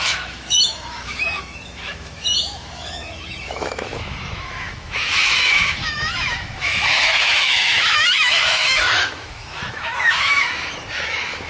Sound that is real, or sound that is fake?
fake